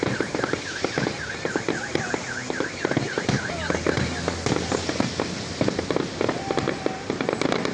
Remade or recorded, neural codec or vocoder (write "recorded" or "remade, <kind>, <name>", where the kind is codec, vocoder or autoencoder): recorded